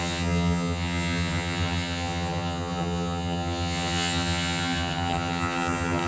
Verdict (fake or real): fake